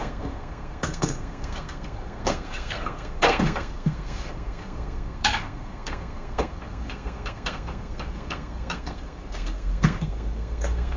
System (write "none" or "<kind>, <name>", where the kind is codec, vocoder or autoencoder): codec, SNAC